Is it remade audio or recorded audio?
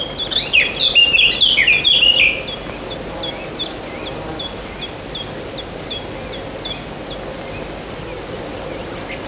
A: recorded